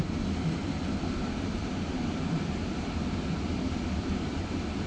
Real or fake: fake